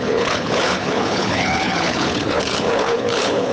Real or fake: fake